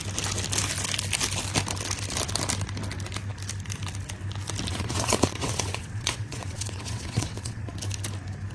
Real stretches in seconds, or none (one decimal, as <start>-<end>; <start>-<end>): 0.0-4.7; 7.7-8.5